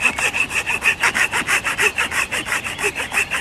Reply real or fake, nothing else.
fake